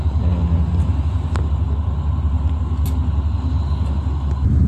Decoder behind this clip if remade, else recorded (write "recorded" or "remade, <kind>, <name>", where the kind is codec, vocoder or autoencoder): recorded